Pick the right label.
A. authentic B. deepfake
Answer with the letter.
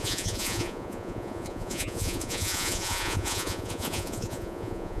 B